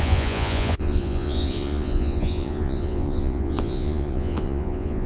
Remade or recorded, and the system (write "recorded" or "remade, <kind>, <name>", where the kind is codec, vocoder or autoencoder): remade, vocoder, Vocos